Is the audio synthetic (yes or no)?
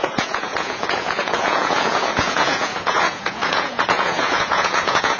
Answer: yes